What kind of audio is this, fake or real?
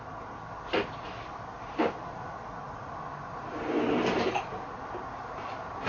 real